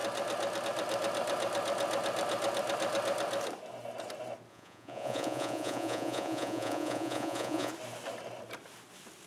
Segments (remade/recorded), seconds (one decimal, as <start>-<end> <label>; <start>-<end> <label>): 0.0-4.5 recorded; 4.5-7.7 remade; 7.7-9.3 recorded